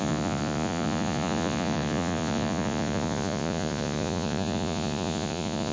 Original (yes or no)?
no